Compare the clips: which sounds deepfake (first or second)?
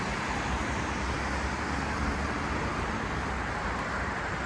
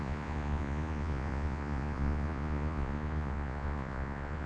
second